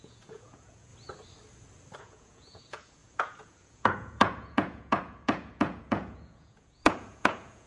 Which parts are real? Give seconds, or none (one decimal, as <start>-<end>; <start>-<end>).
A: 0.9-2.0